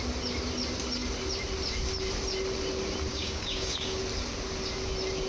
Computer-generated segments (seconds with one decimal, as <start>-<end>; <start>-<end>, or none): 3.1-4.0